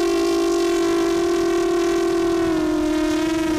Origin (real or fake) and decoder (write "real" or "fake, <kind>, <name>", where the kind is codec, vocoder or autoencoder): real